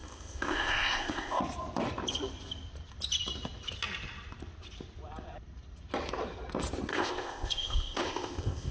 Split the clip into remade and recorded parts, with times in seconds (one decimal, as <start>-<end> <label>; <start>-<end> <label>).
0.0-1.4 remade; 1.4-6.9 recorded; 6.9-8.7 remade